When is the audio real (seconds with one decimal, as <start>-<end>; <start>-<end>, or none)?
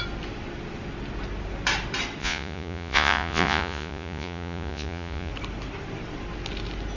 0.0-2.2; 5.3-7.0